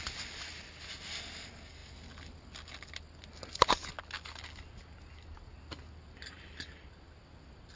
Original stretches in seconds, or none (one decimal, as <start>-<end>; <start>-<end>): 0.0-7.8